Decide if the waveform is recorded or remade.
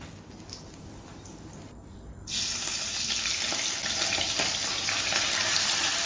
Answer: recorded